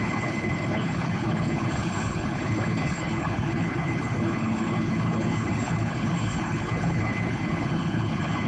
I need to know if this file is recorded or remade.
remade